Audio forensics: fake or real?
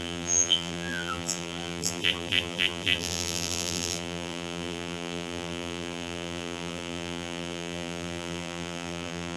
fake